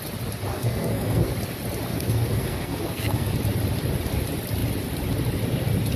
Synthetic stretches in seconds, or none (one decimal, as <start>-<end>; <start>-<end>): 0.5-1.3; 1.9-3.3